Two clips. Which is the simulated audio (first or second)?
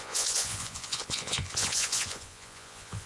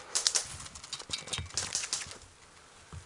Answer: first